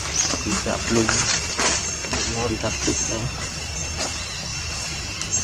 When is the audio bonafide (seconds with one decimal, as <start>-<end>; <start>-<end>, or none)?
0.0-5.4

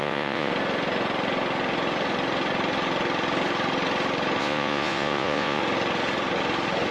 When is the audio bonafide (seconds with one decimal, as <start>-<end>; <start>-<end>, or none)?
0.5-4.4; 5.6-6.9

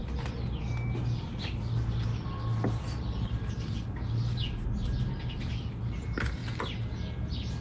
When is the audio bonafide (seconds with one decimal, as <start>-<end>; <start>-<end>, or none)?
0.0-7.6

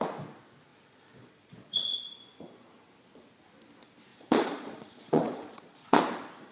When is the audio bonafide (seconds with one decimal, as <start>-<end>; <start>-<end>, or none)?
0.0-0.7; 2.0-4.1; 6.0-6.5